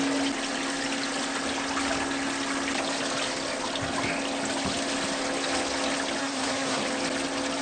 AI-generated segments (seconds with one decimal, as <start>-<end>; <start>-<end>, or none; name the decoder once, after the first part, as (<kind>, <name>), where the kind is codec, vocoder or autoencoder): 6.2-6.8 (codec, SNAC)